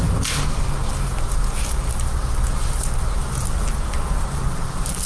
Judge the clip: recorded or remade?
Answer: recorded